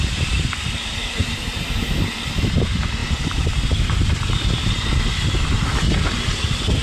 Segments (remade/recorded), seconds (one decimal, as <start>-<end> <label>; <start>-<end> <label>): 0.0-1.2 recorded; 1.2-1.9 remade; 1.9-6.8 recorded